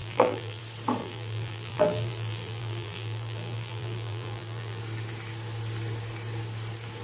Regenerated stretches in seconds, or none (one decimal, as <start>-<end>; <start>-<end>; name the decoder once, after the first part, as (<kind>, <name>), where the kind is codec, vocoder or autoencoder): 0.0-0.6 (vocoder, BigVGAN v2); 1.0-4.8

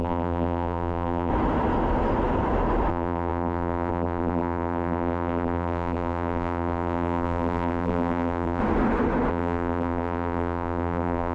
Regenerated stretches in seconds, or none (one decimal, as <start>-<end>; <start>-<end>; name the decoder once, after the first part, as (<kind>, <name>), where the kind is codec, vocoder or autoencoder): 0.0-1.3 (vocoder, BigVGAN v2); 2.9-8.6; 9.3-11.3